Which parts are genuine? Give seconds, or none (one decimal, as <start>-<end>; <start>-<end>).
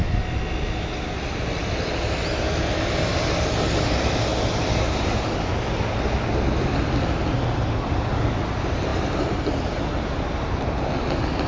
0.0-11.5